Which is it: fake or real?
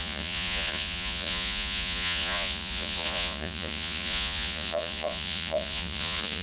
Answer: fake